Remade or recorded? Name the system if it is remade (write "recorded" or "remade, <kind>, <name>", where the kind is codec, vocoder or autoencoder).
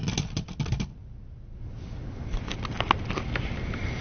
recorded